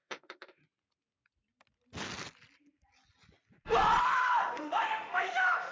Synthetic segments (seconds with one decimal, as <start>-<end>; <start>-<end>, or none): 0.0-0.6; 4.0-5.7